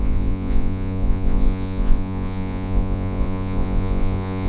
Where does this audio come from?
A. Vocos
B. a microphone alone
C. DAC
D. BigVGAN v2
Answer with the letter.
A